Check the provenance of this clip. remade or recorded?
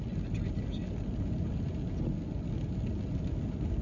recorded